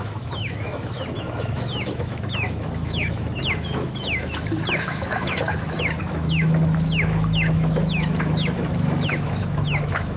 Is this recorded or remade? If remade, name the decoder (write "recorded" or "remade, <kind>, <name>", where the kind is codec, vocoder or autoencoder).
remade, autoencoder, DAC-VAE